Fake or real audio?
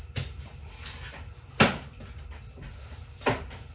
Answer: real